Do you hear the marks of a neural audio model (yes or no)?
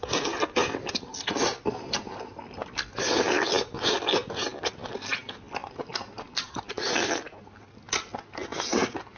no